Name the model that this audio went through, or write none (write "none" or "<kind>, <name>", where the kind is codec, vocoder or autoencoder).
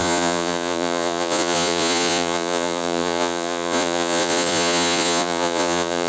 vocoder, Vocos